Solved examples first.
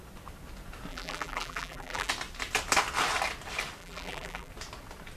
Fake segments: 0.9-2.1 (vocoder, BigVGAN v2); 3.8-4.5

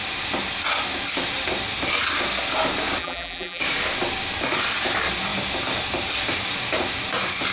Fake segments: 3.0-3.6 (vocoder, BigVGAN v2)

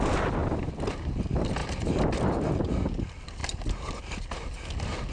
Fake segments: 1.6-2.5 (vocoder, BigVGAN v2); 3.4-4.0

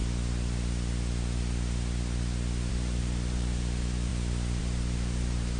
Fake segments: 2.7-4.1 (vocoder, BigVGAN v2); 4.6-5.6

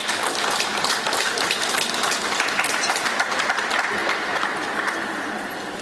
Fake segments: 0.0-2.8 (vocoder, BigVGAN v2)

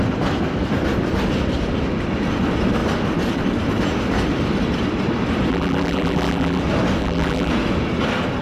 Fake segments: 5.5-6.6 (vocoder, BigVGAN v2); 7.0-7.5

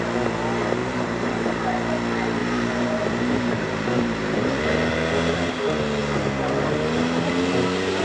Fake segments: 0.8-1.6 (vocoder, BigVGAN v2); 2.4-4.6

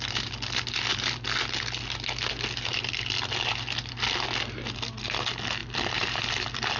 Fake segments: 5.6-6.8 (vocoder, BigVGAN v2)